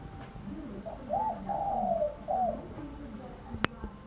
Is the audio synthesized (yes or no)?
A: no